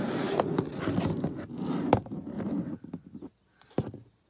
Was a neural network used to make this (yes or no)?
no